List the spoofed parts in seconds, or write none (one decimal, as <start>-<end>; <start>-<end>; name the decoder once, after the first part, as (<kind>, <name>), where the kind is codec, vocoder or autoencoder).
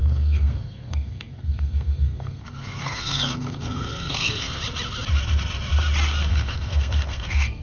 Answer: 0.0-4.6 (codec, SNAC); 6.3-7.6